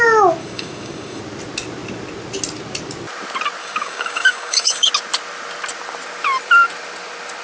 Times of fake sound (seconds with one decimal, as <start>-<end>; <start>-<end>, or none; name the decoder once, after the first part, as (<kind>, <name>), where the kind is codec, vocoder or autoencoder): 0.4-1.2 (codec, DAC); 3.6-4.9